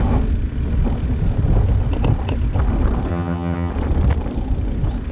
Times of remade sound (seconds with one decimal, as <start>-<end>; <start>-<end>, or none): 3.1-3.7